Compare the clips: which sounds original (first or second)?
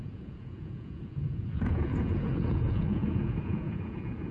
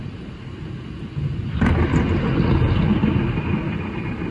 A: second